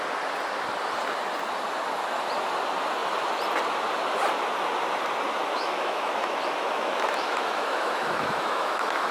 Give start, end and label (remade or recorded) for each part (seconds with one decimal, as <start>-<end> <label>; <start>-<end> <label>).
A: 0.0-5.4 recorded; 5.4-9.1 remade